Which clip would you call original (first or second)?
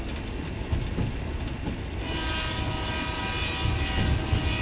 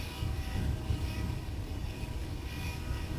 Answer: first